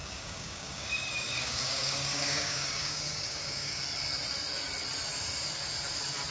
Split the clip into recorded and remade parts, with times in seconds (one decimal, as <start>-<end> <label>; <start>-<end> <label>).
0.0-3.8 remade; 3.8-6.3 recorded